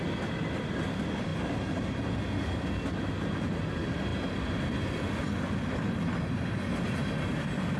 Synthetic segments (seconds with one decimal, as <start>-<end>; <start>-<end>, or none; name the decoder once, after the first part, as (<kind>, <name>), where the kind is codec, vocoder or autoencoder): none